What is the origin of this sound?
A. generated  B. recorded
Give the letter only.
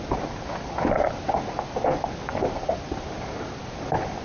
B